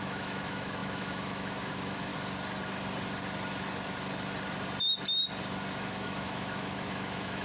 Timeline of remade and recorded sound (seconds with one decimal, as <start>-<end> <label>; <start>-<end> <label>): 0.0-2.1 remade; 2.1-5.7 recorded; 5.7-7.4 remade